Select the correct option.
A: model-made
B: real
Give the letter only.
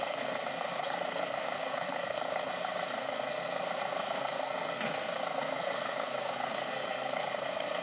A